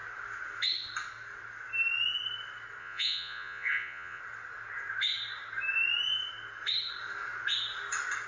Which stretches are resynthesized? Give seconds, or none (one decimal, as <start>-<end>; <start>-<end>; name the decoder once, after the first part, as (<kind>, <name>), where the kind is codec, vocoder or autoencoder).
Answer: 2.8-4.2 (vocoder, Vocos)